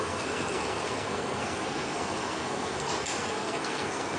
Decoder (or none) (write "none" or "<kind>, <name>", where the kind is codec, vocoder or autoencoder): codec, SNAC